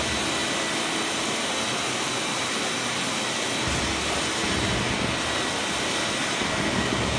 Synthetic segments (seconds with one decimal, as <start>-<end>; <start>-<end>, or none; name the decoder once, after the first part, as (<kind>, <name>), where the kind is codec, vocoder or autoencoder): 6.2-7.2 (codec, DAC)